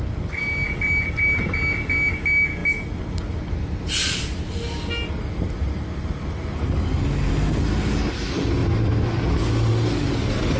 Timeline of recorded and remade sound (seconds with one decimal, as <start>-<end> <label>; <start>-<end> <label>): 0.0-10.6 recorded